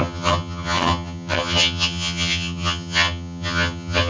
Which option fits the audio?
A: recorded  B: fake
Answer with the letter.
B